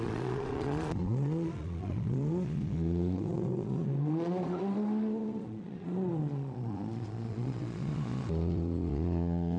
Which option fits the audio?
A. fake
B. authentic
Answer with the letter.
A